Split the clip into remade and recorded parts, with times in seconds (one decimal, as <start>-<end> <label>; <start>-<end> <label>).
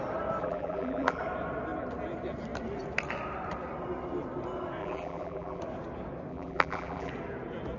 0.0-0.4 recorded; 0.4-1.2 remade; 1.2-4.8 recorded; 4.8-5.6 remade; 5.6-6.3 recorded; 6.3-7.1 remade; 7.1-7.8 recorded